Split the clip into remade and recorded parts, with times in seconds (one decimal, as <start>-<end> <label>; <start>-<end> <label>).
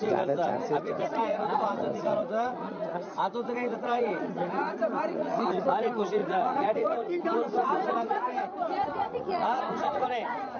0.0-10.6 remade